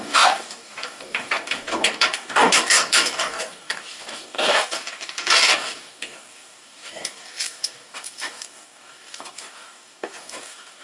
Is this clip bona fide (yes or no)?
no